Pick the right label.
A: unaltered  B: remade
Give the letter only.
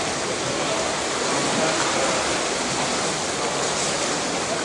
A